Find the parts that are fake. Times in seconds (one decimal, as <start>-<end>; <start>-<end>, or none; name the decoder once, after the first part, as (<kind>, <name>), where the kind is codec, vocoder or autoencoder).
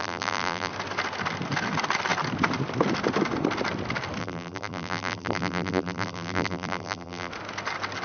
0.0-0.7 (vocoder, BigVGAN v2); 4.2-7.3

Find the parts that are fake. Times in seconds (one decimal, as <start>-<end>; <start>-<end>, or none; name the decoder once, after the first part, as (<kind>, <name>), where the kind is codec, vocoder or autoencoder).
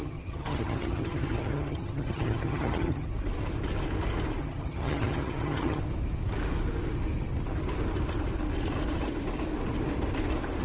0.0-3.1 (vocoder, HiFi-GAN); 4.4-5.8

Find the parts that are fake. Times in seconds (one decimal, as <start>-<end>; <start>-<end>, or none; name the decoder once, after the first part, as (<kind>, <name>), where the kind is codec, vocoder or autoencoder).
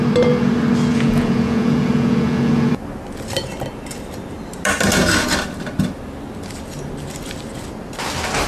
0.9-2.7 (vocoder, Vocos)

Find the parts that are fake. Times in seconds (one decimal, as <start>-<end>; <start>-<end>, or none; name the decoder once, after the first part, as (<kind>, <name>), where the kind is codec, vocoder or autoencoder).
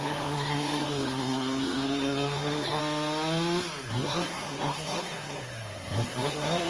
0.0-2.8 (codec, SNAC); 3.9-6.7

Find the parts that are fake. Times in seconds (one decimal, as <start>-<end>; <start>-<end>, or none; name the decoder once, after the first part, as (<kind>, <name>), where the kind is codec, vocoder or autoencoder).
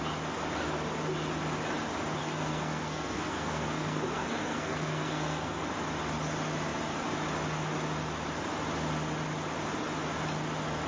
2.2-5.6 (codec, SNAC)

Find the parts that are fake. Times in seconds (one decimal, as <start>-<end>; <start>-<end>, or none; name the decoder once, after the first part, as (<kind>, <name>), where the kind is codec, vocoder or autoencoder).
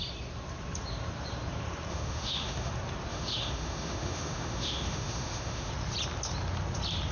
1.9-2.7 (autoencoder, DAC-VAE); 3.1-5.7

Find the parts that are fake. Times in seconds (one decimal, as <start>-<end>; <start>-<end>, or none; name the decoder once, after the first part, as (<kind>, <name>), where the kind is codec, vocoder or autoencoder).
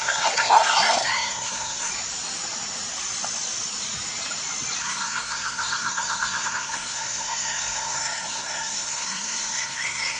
0.0-1.9 (codec, SNAC); 4.8-10.2